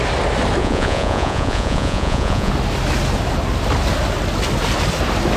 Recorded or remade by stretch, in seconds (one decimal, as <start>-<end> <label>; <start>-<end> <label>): 0.0-0.6 recorded; 0.6-2.5 remade; 2.5-5.4 recorded